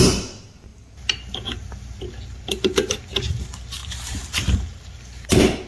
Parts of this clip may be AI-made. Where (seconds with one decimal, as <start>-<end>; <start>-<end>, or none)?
none